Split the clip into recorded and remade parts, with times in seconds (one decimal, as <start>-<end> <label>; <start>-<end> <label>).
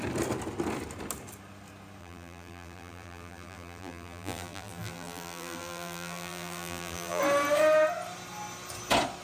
0.0-2.0 recorded; 2.0-7.2 remade; 7.2-9.2 recorded